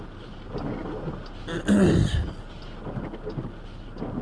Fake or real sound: real